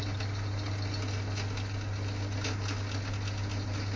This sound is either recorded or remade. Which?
recorded